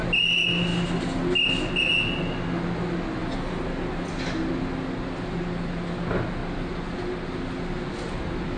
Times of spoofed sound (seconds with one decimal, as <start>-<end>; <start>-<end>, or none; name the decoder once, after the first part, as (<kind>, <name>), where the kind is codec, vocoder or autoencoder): none